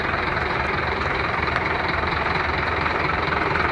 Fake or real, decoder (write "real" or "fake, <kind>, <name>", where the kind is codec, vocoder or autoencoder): fake, vocoder, BigVGAN v2